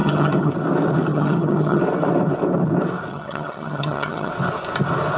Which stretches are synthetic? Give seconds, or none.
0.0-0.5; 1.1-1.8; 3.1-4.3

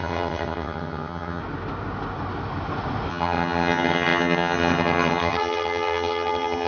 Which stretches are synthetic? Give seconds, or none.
0.0-1.4; 3.1-6.7